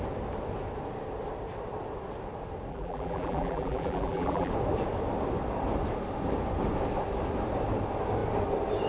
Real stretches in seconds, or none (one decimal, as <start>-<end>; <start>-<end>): 0.0-2.7; 4.5-8.9